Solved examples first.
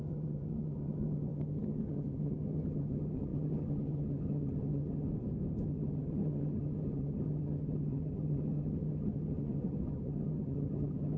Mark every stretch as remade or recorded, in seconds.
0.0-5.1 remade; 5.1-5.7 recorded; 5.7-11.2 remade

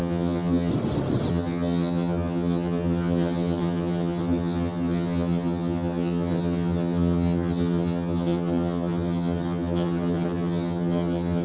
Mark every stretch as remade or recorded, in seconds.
0.0-0.7 remade; 0.7-1.3 recorded; 1.3-11.4 remade

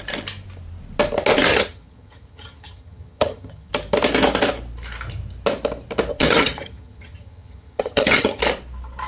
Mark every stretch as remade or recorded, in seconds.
0.0-1.5 recorded; 1.5-3.7 remade; 3.7-6.1 recorded; 6.1-8.4 remade; 8.4-9.1 recorded

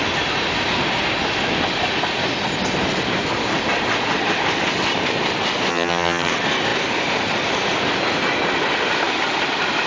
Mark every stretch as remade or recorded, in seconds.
0.0-5.7 recorded; 5.7-6.3 remade; 6.3-9.9 recorded

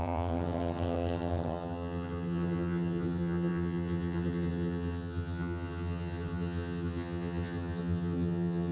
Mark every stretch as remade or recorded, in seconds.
0.0-8.7 remade